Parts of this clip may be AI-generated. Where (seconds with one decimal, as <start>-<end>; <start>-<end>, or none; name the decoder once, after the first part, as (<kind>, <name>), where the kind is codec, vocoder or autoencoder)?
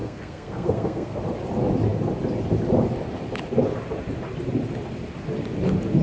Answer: 0.0-1.2 (codec, SNAC)